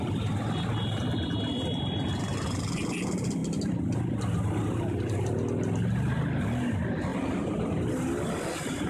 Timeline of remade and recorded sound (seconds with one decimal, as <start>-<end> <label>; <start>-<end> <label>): 0.0-8.9 recorded